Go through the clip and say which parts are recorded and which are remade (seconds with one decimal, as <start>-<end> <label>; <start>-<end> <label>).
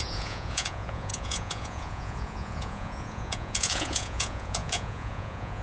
0.0-5.6 remade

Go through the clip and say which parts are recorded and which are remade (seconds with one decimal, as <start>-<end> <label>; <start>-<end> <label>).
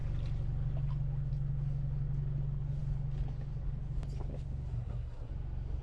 0.0-4.7 recorded; 4.7-5.3 remade; 5.3-5.8 recorded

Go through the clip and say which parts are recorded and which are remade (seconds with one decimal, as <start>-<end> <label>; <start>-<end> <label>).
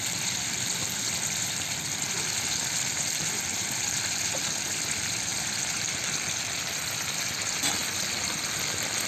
0.0-9.1 recorded